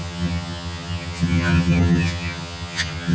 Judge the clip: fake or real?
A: fake